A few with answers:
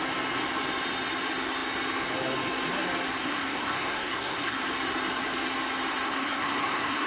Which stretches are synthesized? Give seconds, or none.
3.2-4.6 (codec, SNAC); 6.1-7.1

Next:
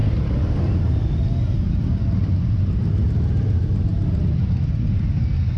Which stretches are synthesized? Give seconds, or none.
none